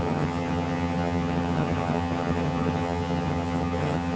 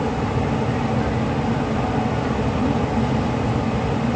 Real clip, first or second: second